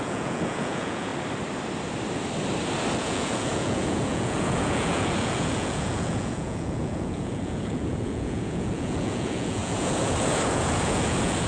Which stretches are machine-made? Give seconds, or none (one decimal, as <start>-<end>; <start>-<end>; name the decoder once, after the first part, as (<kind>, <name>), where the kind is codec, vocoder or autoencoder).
0.0-1.1 (vocoder, Vocos); 3.0-11.5